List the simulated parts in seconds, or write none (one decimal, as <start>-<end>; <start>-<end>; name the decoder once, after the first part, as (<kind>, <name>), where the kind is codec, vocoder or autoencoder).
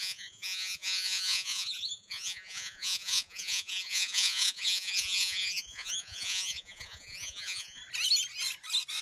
0.0-7.8 (vocoder, Vocos)